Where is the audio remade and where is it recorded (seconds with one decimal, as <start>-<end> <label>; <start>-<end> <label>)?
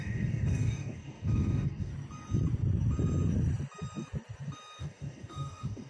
0.0-1.9 remade; 1.9-4.8 recorded; 4.8-5.9 remade